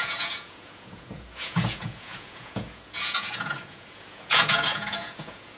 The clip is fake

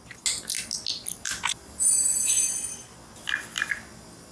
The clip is real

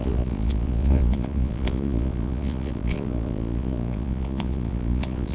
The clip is fake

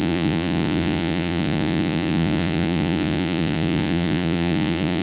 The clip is fake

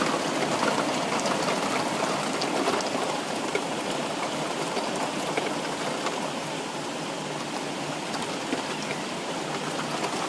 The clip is real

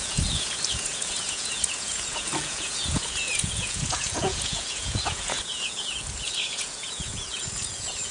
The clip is fake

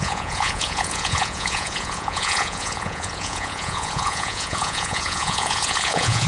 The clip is fake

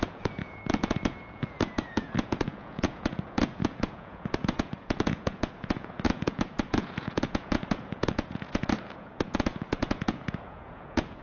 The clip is fake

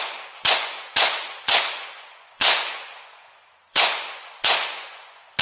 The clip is fake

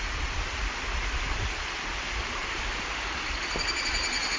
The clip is real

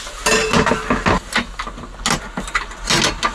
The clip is real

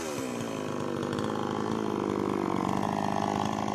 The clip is real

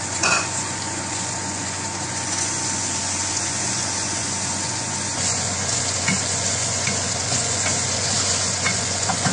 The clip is fake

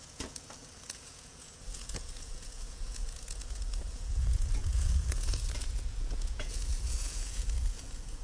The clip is fake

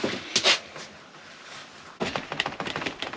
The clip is real